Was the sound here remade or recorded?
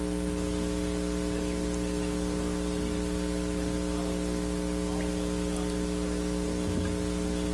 recorded